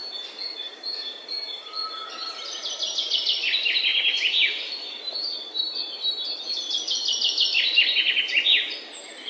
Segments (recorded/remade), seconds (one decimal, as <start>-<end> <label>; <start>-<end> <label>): 0.0-9.3 recorded